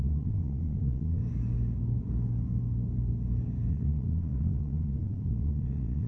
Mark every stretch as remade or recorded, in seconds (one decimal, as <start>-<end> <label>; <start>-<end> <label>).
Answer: 0.0-1.2 remade; 1.2-3.7 recorded; 3.7-6.1 remade